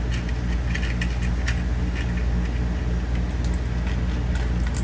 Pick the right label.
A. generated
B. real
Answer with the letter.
B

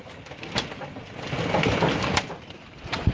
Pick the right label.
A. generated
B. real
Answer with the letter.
B